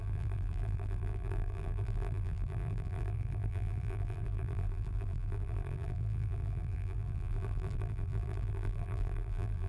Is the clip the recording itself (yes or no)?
no